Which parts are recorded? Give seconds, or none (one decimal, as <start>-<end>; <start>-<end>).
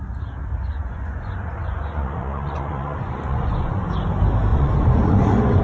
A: 0.0-0.4; 3.8-4.5